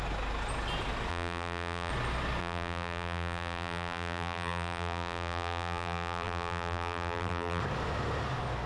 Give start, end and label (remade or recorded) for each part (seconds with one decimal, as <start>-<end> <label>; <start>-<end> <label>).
0.0-1.1 recorded; 1.1-1.9 remade; 1.9-2.4 recorded; 2.4-7.6 remade; 7.6-8.7 recorded